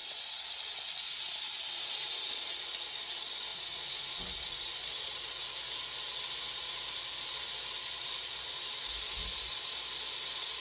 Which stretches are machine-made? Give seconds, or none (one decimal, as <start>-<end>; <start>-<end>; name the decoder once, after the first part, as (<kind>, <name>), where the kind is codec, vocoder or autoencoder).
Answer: 3.5-4.2 (vocoder, Vocos)